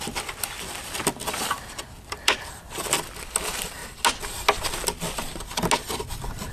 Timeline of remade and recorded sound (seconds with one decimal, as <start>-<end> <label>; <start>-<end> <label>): 0.0-3.8 remade; 3.8-6.1 recorded; 6.1-6.5 remade